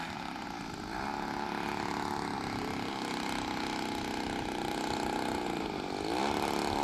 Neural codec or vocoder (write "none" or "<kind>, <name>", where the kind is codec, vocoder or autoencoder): none